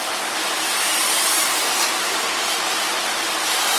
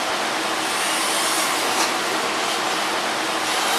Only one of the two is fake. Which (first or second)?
first